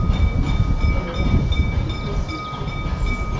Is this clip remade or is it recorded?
recorded